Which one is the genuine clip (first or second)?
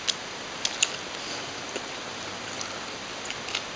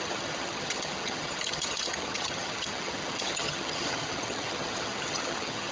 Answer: first